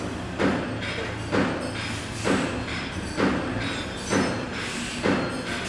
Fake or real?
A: real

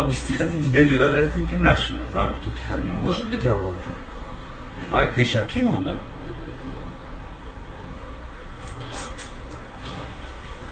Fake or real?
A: fake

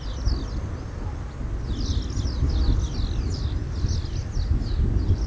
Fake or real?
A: real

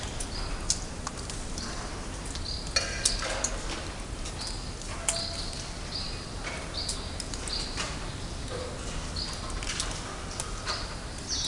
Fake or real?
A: real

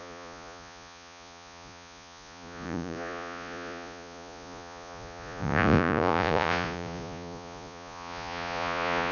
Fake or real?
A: fake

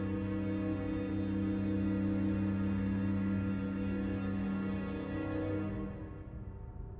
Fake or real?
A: real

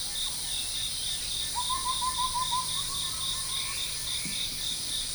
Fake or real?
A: real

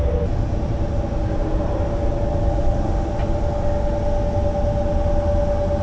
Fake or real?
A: real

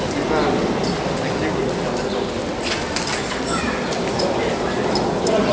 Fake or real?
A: real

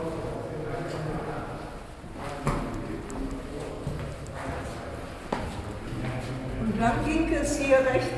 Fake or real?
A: real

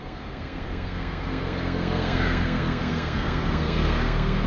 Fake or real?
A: fake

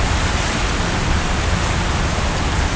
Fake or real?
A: real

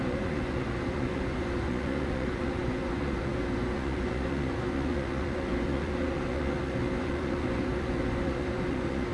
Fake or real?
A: fake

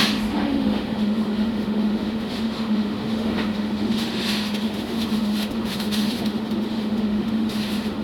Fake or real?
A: fake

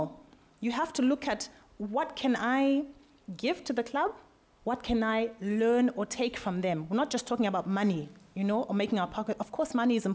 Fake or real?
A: real